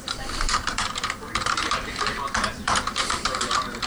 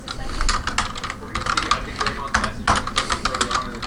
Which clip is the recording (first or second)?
second